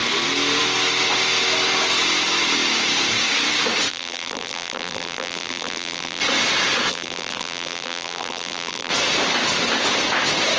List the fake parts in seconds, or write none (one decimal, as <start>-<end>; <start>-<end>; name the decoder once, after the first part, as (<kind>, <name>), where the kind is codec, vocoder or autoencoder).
3.9-6.2 (vocoder, BigVGAN v2); 6.9-8.9